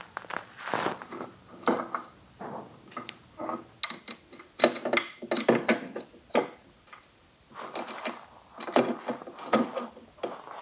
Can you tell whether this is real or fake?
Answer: real